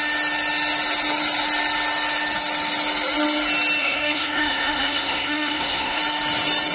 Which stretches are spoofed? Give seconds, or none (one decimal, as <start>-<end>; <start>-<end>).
3.8-6.0